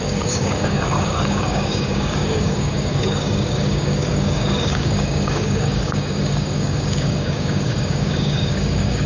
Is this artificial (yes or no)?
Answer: yes